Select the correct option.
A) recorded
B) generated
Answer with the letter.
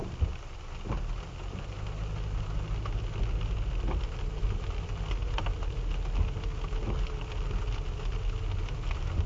A